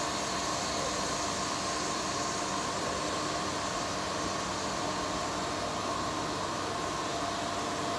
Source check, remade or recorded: recorded